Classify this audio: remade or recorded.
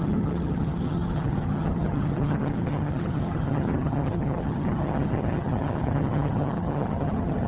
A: remade